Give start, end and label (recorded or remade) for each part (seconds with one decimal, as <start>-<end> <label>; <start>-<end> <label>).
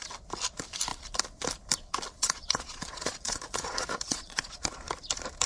0.0-2.2 recorded; 2.2-4.9 remade; 4.9-5.5 recorded